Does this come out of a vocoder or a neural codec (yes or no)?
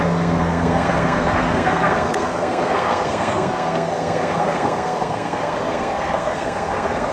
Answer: yes